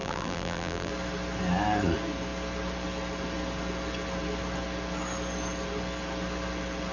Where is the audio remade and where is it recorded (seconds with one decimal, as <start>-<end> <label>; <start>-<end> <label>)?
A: 0.0-0.9 remade; 0.9-6.9 recorded